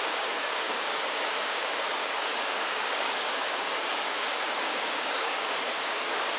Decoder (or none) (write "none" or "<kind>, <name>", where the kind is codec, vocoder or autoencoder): codec, DAC